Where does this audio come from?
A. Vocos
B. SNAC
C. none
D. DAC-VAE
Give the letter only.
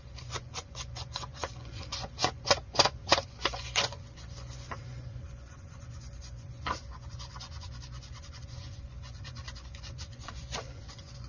A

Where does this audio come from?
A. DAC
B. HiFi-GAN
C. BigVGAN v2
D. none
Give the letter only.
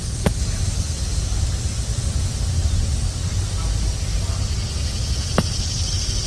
D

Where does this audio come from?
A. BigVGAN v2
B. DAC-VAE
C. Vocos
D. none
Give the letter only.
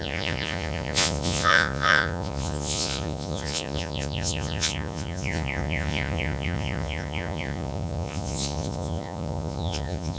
C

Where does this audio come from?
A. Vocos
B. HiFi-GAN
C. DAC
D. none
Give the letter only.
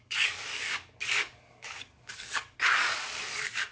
C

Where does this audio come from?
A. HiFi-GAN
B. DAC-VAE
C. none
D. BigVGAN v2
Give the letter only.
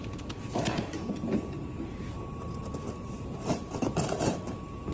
D